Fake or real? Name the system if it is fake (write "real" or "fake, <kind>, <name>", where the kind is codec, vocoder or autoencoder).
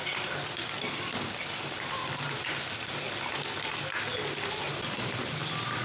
real